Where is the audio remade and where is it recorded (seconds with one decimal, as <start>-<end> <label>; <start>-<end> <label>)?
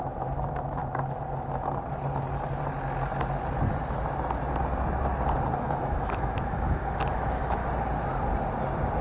0.0-0.8 remade; 0.8-5.6 recorded; 5.6-7.6 remade; 7.6-9.0 recorded